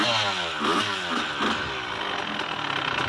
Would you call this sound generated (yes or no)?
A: no